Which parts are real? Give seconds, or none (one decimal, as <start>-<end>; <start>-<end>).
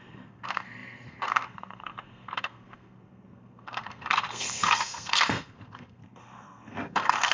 none